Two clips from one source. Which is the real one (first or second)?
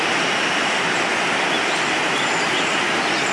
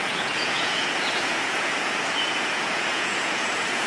first